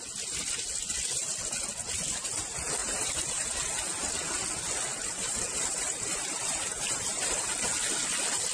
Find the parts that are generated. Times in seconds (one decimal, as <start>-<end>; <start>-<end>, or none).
2.8-3.5; 4.9-7.5